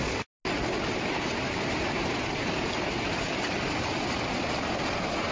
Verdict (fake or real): real